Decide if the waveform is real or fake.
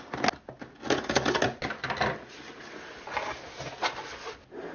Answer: real